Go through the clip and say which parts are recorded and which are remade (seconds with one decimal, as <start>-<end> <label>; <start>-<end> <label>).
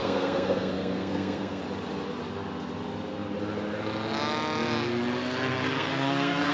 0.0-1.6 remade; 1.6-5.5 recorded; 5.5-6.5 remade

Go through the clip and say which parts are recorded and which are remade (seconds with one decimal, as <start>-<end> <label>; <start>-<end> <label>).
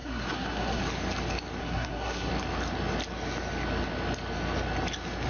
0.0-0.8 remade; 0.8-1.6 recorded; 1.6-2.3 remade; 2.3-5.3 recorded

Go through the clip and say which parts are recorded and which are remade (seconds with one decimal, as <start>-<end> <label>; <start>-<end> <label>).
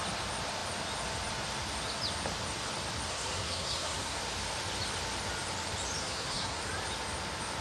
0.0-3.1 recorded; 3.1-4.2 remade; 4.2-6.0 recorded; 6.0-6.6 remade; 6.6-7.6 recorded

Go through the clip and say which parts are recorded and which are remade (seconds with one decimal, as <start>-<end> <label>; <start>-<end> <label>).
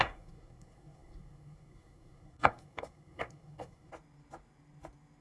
0.0-3.9 remade; 3.9-5.2 recorded